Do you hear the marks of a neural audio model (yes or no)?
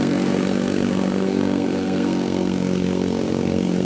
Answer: yes